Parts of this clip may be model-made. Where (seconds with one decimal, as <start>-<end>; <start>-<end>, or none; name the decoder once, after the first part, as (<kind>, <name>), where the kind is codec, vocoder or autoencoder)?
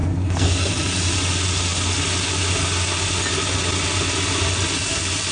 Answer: 0.0-0.7 (codec, SNAC)